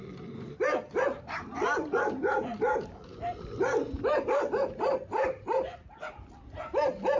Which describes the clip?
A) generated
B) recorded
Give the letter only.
B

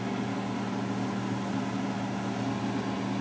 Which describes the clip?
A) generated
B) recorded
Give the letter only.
B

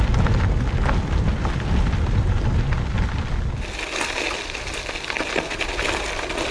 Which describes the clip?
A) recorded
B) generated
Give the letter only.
A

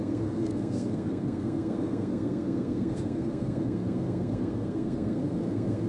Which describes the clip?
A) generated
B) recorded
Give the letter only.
A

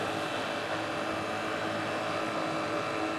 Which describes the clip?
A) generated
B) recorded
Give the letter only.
B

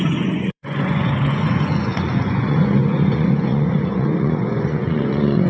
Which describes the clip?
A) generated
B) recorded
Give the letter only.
A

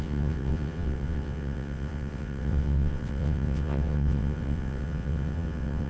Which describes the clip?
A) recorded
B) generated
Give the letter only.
B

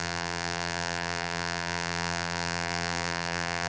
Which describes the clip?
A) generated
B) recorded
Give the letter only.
A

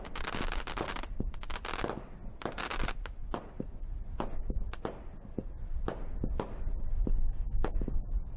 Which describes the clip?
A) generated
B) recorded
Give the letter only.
B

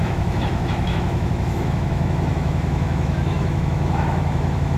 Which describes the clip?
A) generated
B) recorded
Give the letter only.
A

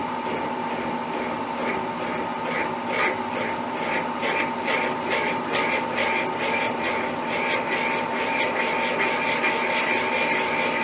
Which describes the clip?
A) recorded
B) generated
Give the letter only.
A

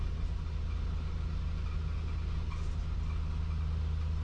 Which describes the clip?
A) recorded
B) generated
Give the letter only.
A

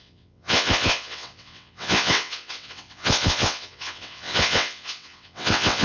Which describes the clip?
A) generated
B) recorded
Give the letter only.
A